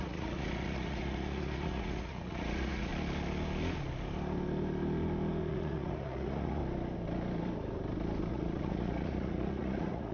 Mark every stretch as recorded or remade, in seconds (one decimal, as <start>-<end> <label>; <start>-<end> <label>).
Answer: 0.0-2.9 remade; 2.9-5.5 recorded; 5.5-6.6 remade; 6.6-8.3 recorded; 8.3-10.1 remade